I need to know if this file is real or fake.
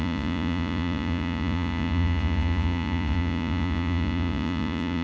fake